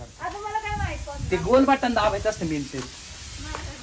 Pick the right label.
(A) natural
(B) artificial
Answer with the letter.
A